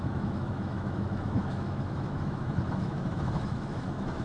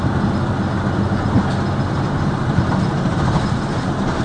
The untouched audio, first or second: second